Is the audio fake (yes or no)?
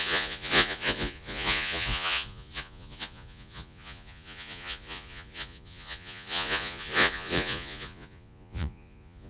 yes